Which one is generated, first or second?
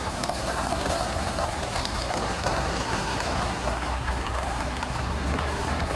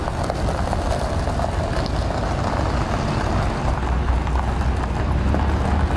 first